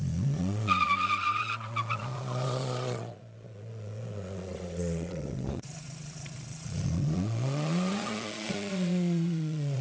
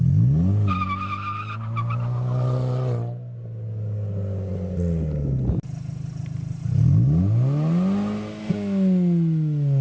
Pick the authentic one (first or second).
second